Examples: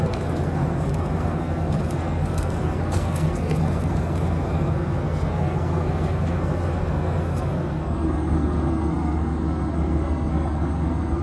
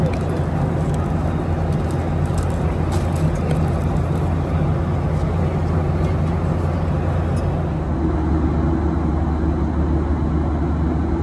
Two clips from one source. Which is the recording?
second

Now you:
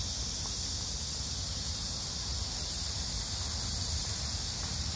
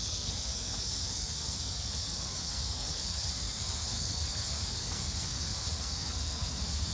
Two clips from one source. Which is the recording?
first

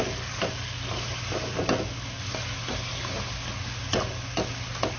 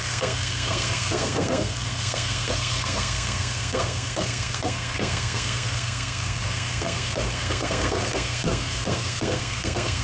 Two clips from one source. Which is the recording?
first